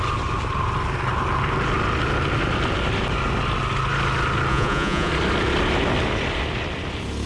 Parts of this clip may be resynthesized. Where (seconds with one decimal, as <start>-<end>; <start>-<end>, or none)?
4.5-5.1